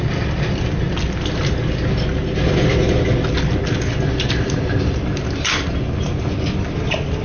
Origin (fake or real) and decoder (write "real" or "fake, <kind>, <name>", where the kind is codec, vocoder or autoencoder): real